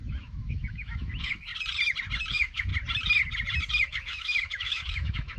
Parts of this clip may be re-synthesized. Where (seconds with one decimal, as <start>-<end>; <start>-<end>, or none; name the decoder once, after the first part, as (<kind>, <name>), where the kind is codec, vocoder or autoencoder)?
0.0-1.5 (autoencoder, DAC-VAE); 2.3-2.7; 3.9-5.4